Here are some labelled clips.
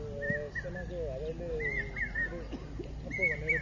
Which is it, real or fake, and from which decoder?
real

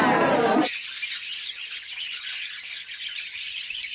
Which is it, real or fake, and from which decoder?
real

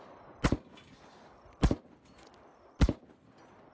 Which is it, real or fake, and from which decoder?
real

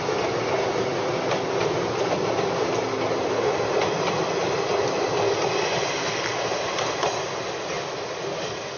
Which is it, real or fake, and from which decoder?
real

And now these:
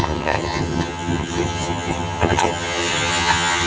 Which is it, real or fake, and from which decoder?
fake, vocoder, HiFi-GAN